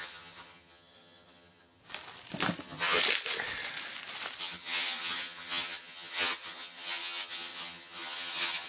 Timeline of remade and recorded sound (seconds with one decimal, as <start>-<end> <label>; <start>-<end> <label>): 0.0-1.8 remade; 1.8-2.6 recorded; 2.6-3.0 remade; 3.0-4.4 recorded; 4.4-8.7 remade